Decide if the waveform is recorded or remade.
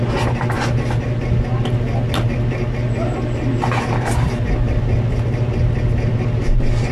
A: recorded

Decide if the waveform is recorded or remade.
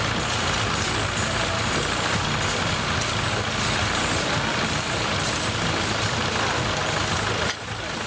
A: recorded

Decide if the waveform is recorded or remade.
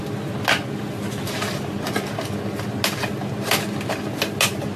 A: recorded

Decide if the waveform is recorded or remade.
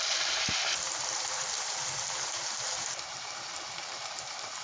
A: remade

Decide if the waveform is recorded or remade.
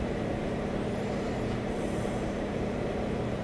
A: remade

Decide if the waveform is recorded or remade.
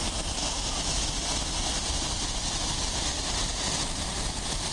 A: recorded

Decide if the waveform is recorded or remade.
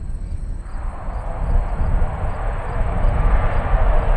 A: recorded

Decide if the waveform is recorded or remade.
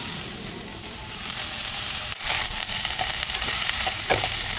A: remade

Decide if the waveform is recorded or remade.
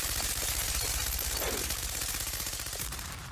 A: remade